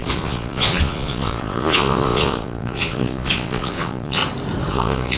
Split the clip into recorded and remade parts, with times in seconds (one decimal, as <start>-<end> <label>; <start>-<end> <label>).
0.0-4.2 remade; 4.2-4.7 recorded; 4.7-5.2 remade